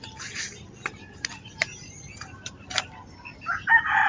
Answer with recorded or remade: remade